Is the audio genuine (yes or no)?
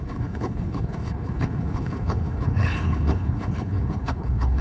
no